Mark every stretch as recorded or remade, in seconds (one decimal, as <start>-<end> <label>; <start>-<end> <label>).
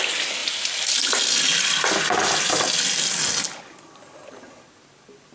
0.0-5.3 recorded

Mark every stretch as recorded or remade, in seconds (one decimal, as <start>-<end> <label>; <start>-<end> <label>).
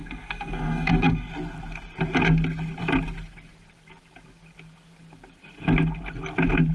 0.0-1.3 remade; 1.3-6.7 recorded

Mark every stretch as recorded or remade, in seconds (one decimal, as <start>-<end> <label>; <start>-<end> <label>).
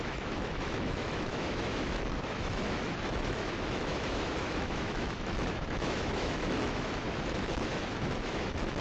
0.0-8.8 remade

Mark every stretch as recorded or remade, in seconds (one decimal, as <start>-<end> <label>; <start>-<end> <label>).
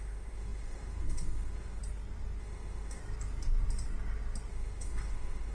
0.0-1.8 remade; 1.8-2.4 recorded; 2.4-3.0 remade; 3.0-4.5 recorded; 4.5-5.5 remade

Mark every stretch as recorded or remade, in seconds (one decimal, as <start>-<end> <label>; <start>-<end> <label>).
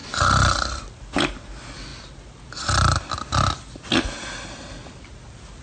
0.0-5.6 recorded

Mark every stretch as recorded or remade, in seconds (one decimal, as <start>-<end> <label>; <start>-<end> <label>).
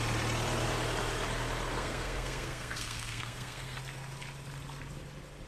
0.0-1.7 recorded; 1.7-3.8 remade; 3.8-5.5 recorded